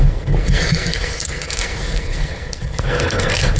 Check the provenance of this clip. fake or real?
fake